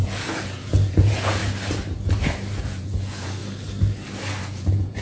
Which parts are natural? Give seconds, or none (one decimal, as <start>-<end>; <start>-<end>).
1.4-2.6; 3.4-4.4